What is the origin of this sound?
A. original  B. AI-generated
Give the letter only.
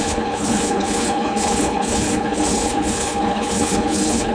B